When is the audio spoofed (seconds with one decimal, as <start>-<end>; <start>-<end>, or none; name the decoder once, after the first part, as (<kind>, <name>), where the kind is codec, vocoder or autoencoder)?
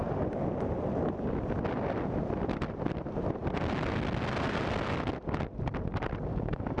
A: 6.3-6.8 (codec, DAC)